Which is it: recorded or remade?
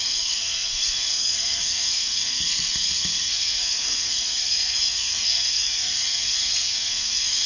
remade